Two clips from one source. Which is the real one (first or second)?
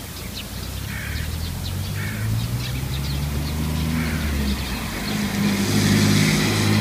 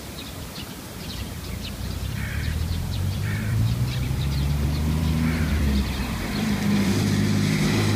first